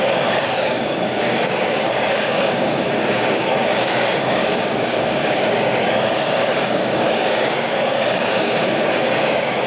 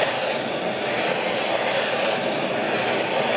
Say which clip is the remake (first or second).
first